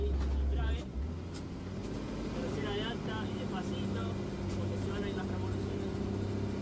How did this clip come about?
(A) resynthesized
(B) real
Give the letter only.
B